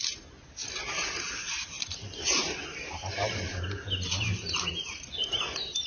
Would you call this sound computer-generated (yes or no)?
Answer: no